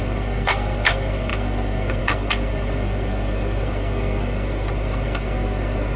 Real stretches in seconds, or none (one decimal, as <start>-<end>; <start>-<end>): none